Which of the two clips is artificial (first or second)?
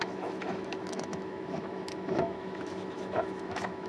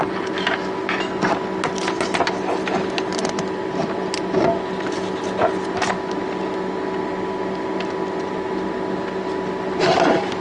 first